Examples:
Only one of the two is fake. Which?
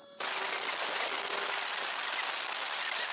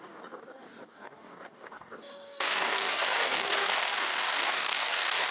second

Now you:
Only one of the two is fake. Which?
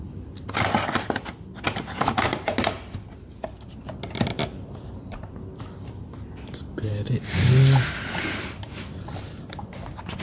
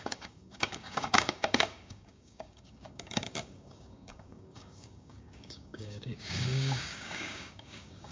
second